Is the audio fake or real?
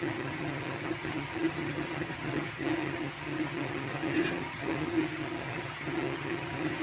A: fake